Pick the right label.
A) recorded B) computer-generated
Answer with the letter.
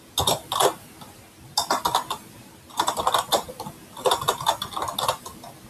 A